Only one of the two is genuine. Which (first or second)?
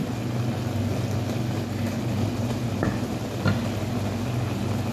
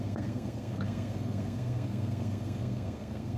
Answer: first